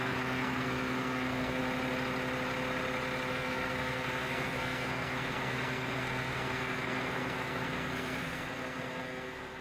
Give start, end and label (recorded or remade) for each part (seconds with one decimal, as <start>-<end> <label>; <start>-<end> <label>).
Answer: 0.0-1.6 remade; 1.6-3.3 recorded; 3.3-9.6 remade